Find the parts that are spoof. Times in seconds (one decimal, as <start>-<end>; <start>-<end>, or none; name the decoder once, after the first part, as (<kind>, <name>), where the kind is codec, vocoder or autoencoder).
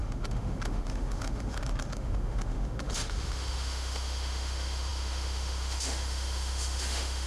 0.0-7.3 (autoencoder, DAC-VAE)